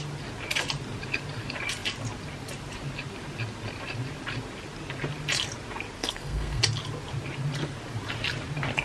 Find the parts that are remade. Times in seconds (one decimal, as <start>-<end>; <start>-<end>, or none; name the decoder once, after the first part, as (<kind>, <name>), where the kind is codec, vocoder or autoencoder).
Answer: 6.0-6.6 (codec, SNAC)